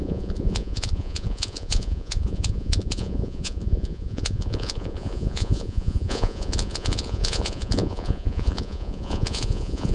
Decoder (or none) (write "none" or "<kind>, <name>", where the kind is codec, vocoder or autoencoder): vocoder, Vocos